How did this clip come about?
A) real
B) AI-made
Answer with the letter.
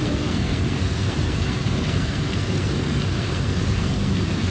B